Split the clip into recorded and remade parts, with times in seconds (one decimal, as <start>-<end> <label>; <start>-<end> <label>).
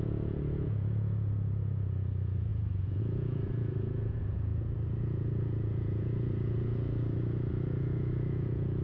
0.0-4.5 remade; 4.5-5.0 recorded; 5.0-8.8 remade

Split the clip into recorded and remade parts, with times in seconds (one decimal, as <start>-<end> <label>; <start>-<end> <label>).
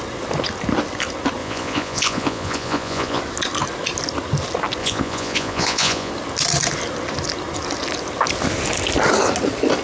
0.0-1.4 recorded; 1.4-3.2 remade; 3.2-4.8 recorded; 4.8-6.1 remade; 6.1-9.8 recorded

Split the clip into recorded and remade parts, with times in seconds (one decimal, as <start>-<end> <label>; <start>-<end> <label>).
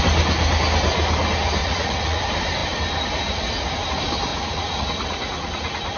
0.0-1.6 recorded; 1.6-2.2 remade; 2.2-4.3 recorded; 4.3-6.0 remade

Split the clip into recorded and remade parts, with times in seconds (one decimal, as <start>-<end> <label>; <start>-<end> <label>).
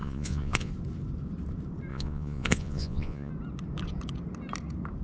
0.0-0.7 remade; 0.7-1.9 recorded; 1.9-3.3 remade; 3.3-5.0 recorded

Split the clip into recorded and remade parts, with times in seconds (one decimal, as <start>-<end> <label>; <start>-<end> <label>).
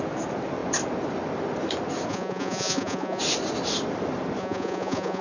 0.0-2.1 recorded; 2.1-3.2 remade; 3.2-4.4 recorded; 4.4-5.2 remade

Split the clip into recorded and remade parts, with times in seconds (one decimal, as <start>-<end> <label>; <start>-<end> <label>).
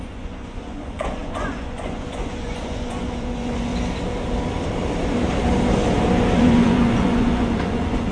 0.0-3.7 remade; 3.7-6.4 recorded; 6.4-8.1 remade